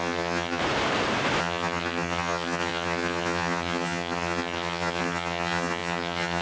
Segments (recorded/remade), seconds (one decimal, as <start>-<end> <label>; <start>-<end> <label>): 0.0-0.6 remade; 0.6-1.4 recorded; 1.4-6.4 remade